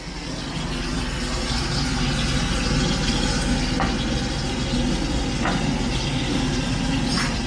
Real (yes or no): yes